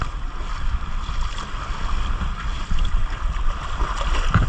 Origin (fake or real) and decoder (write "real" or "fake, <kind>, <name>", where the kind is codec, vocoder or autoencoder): real